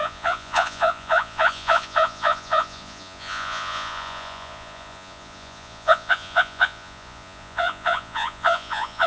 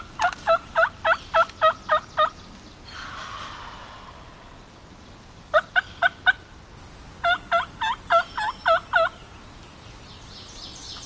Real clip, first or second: second